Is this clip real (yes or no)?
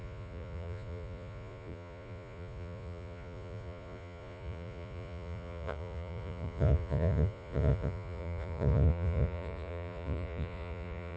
no